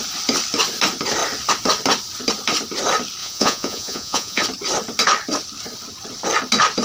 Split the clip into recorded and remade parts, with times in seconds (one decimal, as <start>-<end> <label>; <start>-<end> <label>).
0.0-3.2 recorded; 3.2-4.4 remade; 4.4-6.8 recorded

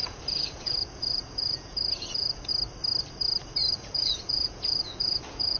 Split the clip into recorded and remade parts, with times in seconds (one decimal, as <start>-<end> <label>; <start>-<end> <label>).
0.0-2.5 remade; 2.5-3.6 recorded; 3.6-5.6 remade

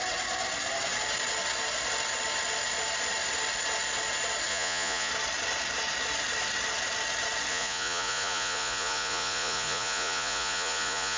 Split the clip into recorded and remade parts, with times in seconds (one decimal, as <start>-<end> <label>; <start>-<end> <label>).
0.0-4.5 recorded; 4.5-5.1 remade; 5.1-7.5 recorded; 7.5-11.2 remade

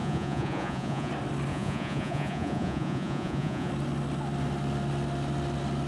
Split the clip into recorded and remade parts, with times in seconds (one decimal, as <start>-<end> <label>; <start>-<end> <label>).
0.0-1.1 remade; 1.1-1.5 recorded; 1.5-3.7 remade; 3.7-5.9 recorded

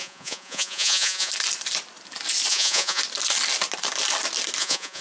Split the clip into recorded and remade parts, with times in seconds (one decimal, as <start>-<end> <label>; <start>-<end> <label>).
0.0-1.3 remade; 1.3-2.5 recorded; 2.5-3.0 remade; 3.0-4.6 recorded; 4.6-5.0 remade

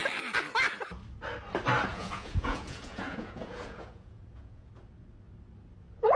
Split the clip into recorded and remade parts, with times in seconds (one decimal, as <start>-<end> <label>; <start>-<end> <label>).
0.0-1.9 recorded; 1.9-4.7 remade; 4.7-6.2 recorded